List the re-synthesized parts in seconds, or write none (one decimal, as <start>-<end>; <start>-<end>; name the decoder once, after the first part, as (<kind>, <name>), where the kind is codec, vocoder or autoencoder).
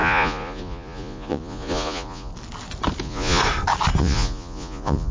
0.0-2.3 (vocoder, Vocos); 3.0-3.4; 4.0-5.1